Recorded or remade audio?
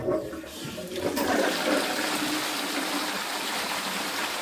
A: remade